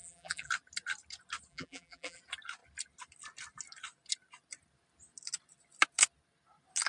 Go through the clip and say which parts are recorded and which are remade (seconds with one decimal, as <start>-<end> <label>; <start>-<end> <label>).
0.0-0.5 remade; 0.5-1.5 recorded; 1.5-2.2 remade; 2.2-6.9 recorded